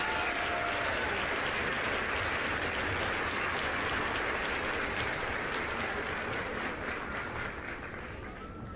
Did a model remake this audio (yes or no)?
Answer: no